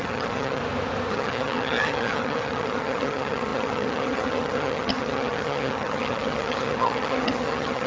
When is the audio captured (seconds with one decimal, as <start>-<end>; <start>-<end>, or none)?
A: 0.6-1.1